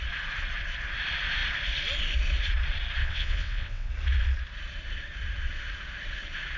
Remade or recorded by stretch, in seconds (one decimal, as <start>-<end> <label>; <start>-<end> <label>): 0.0-3.0 recorded; 3.0-3.9 remade; 3.9-6.6 recorded